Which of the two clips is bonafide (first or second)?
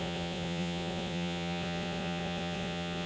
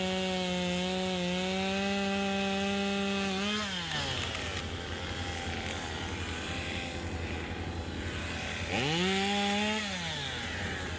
second